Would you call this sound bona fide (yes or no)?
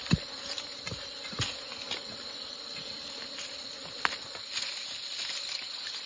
yes